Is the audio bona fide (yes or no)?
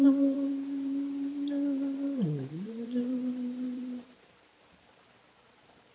no